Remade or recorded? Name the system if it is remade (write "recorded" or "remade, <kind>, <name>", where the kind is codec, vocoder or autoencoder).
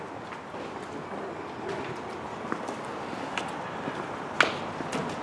recorded